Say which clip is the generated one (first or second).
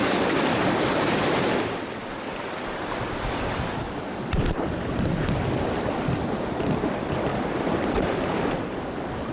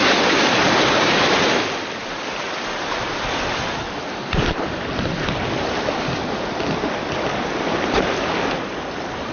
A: first